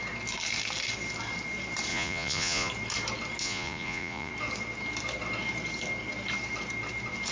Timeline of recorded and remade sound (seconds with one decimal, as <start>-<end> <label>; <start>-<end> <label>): 0.0-1.9 recorded; 1.9-2.7 remade; 2.7-3.4 recorded; 3.4-4.3 remade; 4.3-7.3 recorded